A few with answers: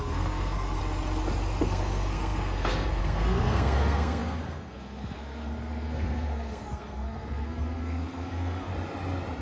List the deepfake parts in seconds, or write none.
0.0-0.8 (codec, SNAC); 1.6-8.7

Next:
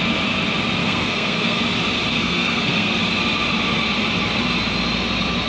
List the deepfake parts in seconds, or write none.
0.8-1.6 (codec, SNAC); 2.1-3.0